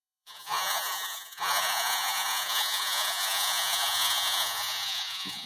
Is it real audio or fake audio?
fake